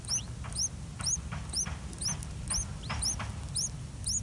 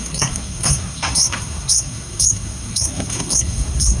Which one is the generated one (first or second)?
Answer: second